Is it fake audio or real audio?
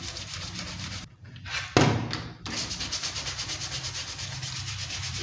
real